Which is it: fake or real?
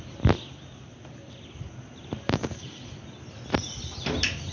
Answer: real